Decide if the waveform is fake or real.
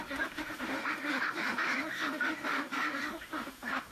fake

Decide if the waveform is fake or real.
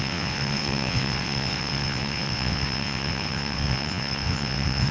fake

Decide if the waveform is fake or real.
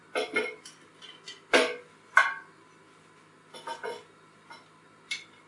real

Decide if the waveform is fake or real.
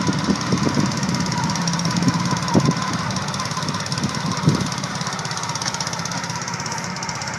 real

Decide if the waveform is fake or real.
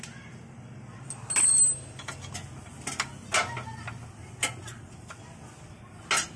real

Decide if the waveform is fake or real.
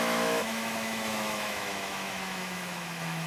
fake